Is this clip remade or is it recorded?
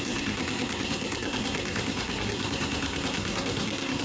remade